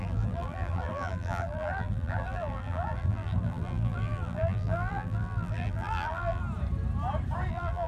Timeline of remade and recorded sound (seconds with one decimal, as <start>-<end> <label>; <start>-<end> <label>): 0.0-6.4 remade; 6.4-7.5 recorded; 7.5-7.9 remade